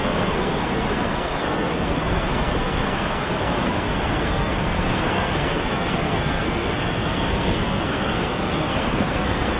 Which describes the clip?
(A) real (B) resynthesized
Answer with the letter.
B